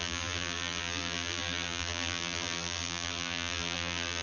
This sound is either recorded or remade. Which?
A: remade